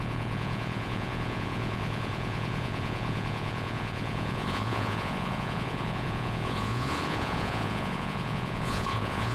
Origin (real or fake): fake